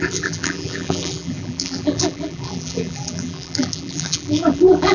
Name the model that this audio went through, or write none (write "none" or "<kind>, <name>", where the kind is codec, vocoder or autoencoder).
vocoder, BigVGAN v2